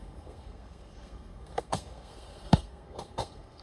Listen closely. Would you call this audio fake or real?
fake